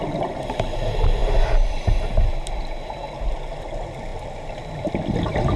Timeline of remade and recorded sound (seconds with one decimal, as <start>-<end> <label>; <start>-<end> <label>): 0.0-1.2 recorded; 1.2-2.3 remade; 2.3-5.6 recorded

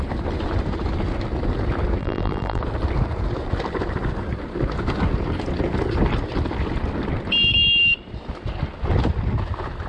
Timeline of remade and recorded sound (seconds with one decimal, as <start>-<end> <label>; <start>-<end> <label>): 0.0-2.0 recorded; 2.0-2.6 remade; 2.6-9.9 recorded

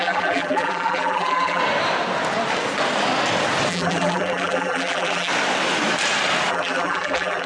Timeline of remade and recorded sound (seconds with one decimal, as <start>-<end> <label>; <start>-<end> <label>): 0.0-1.6 remade; 1.6-3.7 recorded; 3.7-5.3 remade; 5.3-6.5 recorded; 6.5-7.5 remade